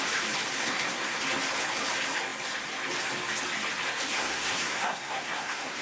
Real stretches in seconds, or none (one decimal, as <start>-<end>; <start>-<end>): 0.0-0.6; 1.2-4.1